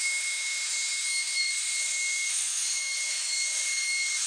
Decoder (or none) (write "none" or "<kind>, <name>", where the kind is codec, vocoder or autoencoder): autoencoder, DAC-VAE